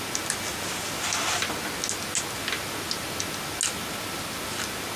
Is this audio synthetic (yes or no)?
no